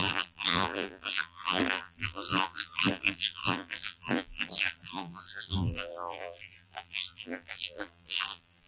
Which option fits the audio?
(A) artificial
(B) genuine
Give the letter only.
A